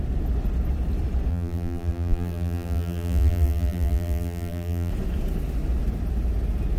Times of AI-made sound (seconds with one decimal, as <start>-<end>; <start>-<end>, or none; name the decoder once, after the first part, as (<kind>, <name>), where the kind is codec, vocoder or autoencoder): 1.3-4.9 (vocoder, BigVGAN v2)